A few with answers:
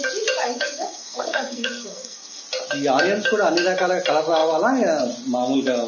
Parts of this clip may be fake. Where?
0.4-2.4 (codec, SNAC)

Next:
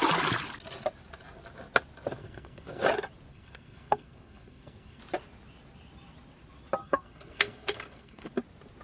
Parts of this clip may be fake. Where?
2.2-2.8 (codec, SNAC); 3.3-5.0; 6.8-8.3

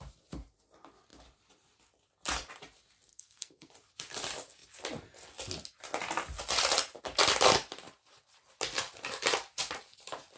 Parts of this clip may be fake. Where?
3.1-3.7 (codec, SNAC)

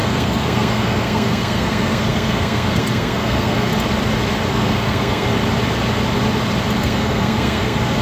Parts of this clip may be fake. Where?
0.0-3.7 (codec, SNAC); 4.5-5.3; 6.8-8.0

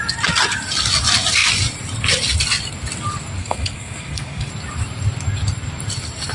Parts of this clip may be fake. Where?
3.4-4.5 (codec, SNAC)

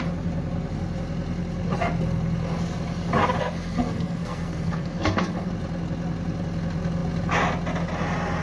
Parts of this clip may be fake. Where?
3.4-5.5 (codec, SNAC)

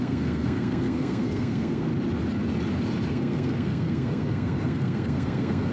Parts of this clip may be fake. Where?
0.0-1.9 (codec, SNAC); 3.1-5.7

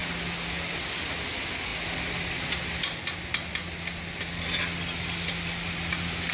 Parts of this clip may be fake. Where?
none